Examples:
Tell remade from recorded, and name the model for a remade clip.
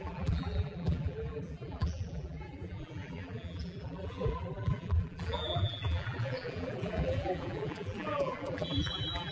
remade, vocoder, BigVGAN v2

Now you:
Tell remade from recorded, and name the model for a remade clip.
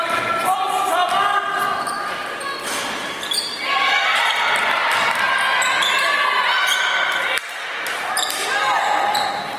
recorded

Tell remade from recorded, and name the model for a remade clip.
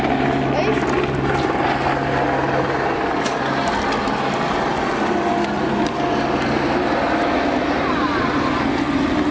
recorded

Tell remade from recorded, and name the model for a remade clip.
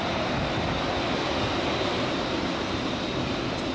recorded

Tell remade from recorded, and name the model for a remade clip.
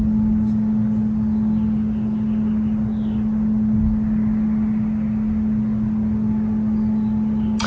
recorded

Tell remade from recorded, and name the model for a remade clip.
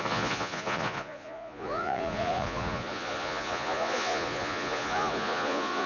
remade, vocoder, Vocos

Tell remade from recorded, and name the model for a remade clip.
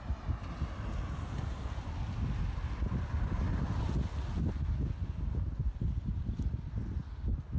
recorded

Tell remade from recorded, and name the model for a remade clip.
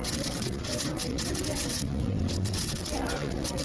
remade, vocoder, WaveNeXt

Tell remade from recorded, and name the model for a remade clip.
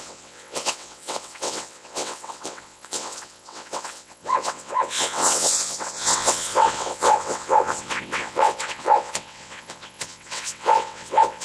remade, vocoder, WaveNeXt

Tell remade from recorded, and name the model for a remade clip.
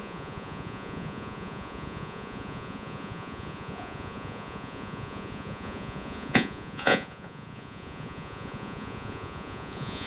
remade, vocoder, Vocos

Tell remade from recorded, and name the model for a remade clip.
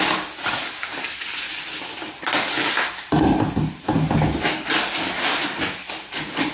recorded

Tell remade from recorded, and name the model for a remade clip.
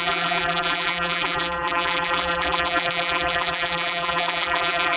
remade, vocoder, BigVGAN v2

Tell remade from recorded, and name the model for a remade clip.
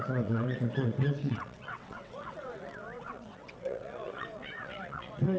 remade, vocoder, WaveNeXt